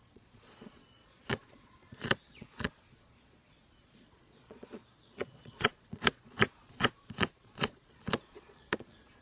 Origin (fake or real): fake